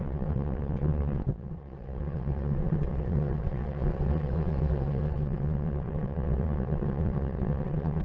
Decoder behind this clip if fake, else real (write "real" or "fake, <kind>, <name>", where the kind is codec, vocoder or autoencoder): fake, vocoder, WaveNeXt